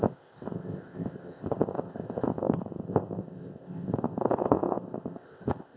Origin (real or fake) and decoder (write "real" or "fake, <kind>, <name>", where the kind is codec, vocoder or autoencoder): fake, codec, ZipCodec